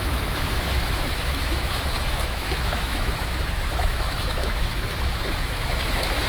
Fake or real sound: fake